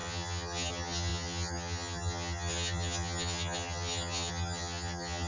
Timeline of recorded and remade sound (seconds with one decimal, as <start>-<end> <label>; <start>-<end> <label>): 0.0-5.3 remade